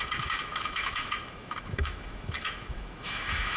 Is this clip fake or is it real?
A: fake